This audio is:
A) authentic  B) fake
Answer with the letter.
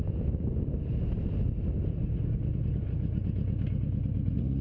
A